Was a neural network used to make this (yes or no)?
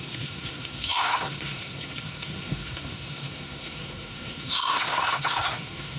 yes